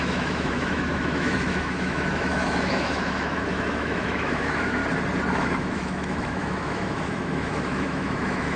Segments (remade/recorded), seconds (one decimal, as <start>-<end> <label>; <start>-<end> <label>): 0.0-4.8 remade; 4.8-5.3 recorded; 5.3-8.6 remade